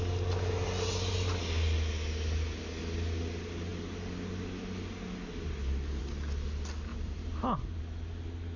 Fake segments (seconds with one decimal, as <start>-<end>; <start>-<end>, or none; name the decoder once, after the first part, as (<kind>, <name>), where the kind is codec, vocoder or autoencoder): 6.9-7.8 (vocoder, BigVGAN v2)